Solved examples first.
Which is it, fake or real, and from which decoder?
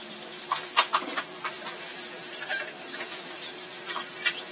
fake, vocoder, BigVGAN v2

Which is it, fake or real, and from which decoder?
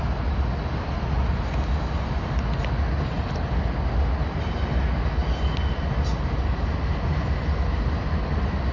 real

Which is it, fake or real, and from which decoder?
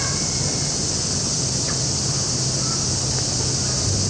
real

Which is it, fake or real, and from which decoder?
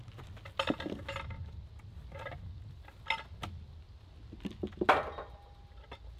real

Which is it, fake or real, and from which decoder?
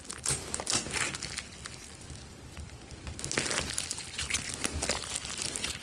real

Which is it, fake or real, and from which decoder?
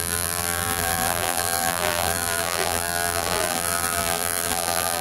fake, vocoder, BigVGAN v2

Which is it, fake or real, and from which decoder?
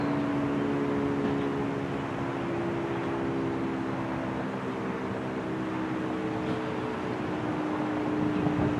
real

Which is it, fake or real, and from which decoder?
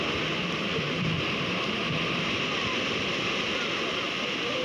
real